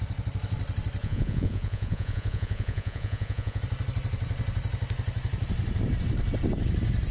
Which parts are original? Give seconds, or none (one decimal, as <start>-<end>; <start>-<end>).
0.0-1.0; 3.6-7.1